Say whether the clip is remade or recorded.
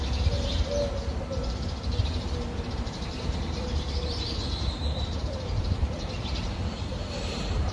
remade